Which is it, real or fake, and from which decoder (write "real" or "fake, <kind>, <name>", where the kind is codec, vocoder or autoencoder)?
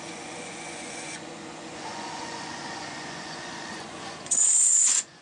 fake, vocoder, Vocos